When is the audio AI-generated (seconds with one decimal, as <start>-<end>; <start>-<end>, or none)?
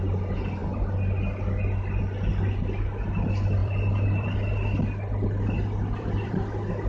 3.6-6.3